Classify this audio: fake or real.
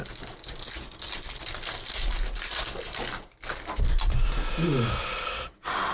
real